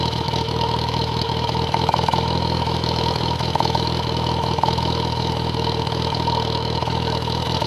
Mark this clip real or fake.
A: fake